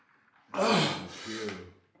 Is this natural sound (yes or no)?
yes